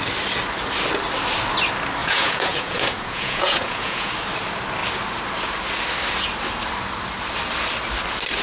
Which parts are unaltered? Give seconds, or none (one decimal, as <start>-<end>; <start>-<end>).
0.0-2.0; 4.1-8.4